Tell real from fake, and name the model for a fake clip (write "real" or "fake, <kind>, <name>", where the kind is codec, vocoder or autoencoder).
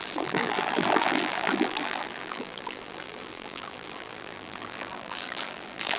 fake, vocoder, BigVGAN v2